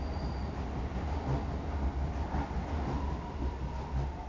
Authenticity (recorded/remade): recorded